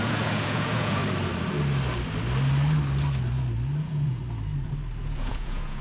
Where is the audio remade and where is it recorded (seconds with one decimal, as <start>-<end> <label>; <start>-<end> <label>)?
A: 0.0-1.0 remade; 1.0-3.8 recorded; 3.8-4.2 remade; 4.2-5.0 recorded; 5.0-5.8 remade